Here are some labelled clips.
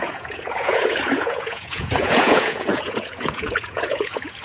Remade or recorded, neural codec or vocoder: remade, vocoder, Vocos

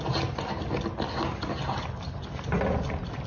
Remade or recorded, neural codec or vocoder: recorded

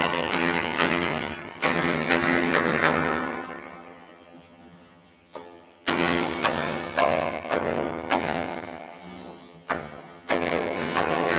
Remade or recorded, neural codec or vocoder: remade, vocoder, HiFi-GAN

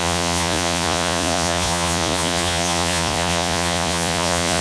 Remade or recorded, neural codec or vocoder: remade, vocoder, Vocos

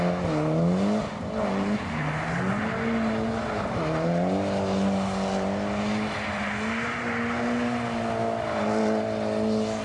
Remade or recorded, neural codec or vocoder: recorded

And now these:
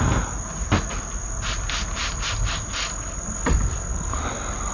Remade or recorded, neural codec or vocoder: recorded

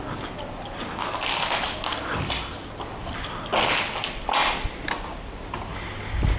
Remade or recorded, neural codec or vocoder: recorded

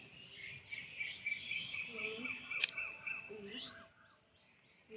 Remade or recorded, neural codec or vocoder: remade, vocoder, BigVGAN v2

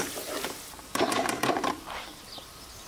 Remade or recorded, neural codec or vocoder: remade, vocoder, BigVGAN v2